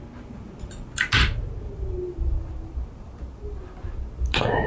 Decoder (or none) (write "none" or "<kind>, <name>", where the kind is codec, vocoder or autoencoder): none